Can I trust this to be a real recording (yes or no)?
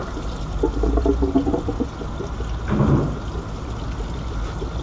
yes